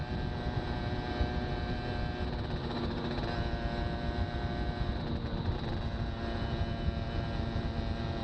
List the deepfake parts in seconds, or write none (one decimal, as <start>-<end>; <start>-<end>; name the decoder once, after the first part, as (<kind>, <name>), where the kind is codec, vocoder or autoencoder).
2.6-3.2 (codec, DAC)